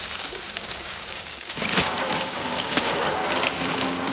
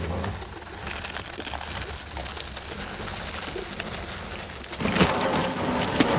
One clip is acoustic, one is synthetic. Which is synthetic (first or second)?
first